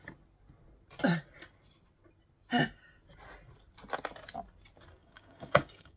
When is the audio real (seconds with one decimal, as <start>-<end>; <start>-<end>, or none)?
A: 0.0-5.0